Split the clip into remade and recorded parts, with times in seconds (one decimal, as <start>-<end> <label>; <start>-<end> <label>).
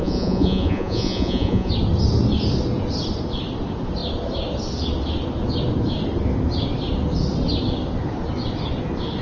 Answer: 0.0-1.7 remade; 1.7-9.2 recorded